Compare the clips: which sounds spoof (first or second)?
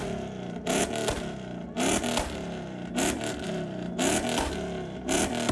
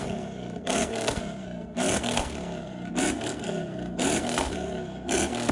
second